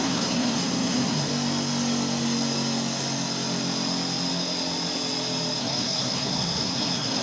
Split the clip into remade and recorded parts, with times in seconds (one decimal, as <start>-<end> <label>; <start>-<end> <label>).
0.0-1.3 remade; 1.3-5.6 recorded; 5.6-7.2 remade

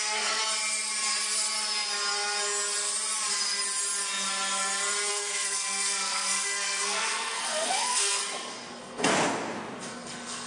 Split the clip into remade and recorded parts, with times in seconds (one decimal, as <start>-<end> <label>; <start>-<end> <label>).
0.0-0.4 remade; 0.4-5.1 recorded; 5.1-8.2 remade; 8.2-8.7 recorded; 8.7-9.1 remade; 9.1-9.8 recorded; 9.8-10.5 remade

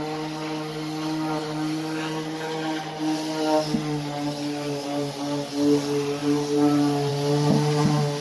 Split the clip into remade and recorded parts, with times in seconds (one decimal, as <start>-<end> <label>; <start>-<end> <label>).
0.0-8.2 recorded

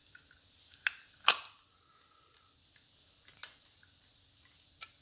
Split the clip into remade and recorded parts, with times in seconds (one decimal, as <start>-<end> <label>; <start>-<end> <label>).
0.0-5.0 recorded

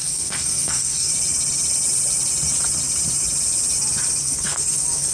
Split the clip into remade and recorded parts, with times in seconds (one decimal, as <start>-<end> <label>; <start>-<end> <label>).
0.0-1.1 remade; 1.1-4.2 recorded; 4.2-5.1 remade

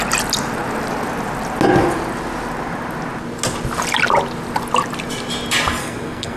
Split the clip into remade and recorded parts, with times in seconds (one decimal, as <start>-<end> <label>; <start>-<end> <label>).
0.0-5.8 recorded; 5.8-6.4 remade

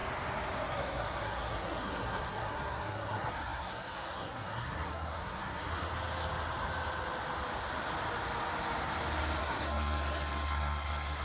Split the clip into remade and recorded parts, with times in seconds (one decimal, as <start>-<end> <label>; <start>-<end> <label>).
0.0-0.7 recorded; 0.7-5.9 remade; 5.9-9.4 recorded; 9.4-11.2 remade